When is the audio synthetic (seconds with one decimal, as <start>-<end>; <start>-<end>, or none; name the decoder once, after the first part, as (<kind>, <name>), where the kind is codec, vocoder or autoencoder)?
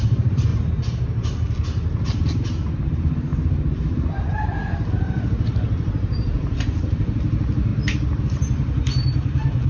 0.0-0.5 (vocoder, BigVGAN v2); 2.7-7.7; 8.2-9.7